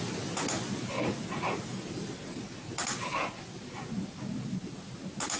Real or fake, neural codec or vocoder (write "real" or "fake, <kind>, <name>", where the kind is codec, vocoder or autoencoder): real